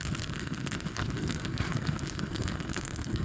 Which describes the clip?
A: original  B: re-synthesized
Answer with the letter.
B